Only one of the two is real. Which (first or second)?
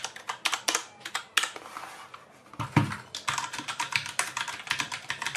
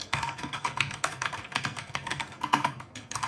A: first